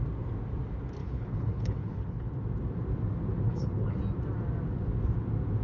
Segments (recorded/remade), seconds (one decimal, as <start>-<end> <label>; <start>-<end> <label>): 0.0-1.0 recorded; 1.0-2.3 remade; 2.3-3.5 recorded; 3.5-4.0 remade; 4.0-5.6 recorded